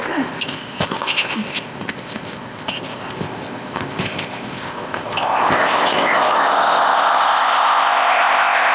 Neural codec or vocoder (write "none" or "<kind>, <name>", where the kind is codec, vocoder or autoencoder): codec, ZipCodec